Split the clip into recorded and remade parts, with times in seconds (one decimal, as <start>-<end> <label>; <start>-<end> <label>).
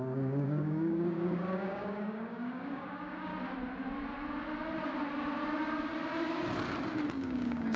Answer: 0.0-3.3 remade; 3.3-7.1 recorded; 7.1-7.8 remade